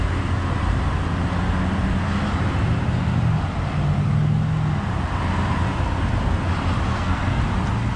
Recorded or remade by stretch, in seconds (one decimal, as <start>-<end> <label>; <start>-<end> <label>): 0.0-6.9 recorded; 6.9-7.4 remade; 7.4-8.0 recorded